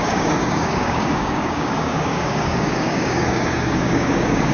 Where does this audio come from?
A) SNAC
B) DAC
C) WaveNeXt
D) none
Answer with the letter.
B